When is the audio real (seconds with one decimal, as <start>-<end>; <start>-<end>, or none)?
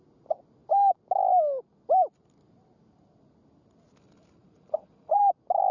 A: 0.0-4.4; 5.2-5.7